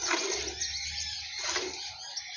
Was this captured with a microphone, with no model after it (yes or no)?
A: yes